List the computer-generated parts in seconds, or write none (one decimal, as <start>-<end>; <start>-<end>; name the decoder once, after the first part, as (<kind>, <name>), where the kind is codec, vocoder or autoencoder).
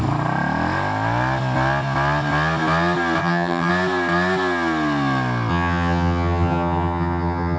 3.2-3.7 (vocoder, HiFi-GAN); 5.5-7.6